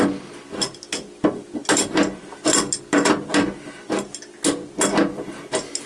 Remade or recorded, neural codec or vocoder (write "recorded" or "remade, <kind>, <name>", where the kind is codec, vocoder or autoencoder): recorded